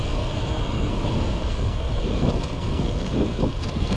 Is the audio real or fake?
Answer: fake